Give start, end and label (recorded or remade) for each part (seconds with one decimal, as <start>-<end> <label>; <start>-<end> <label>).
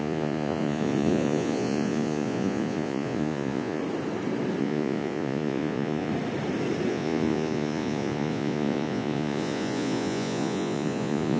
0.0-3.8 remade; 3.8-4.6 recorded; 4.6-6.1 remade; 6.1-6.9 recorded; 6.9-11.4 remade